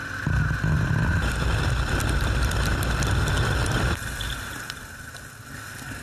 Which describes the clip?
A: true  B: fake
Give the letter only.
A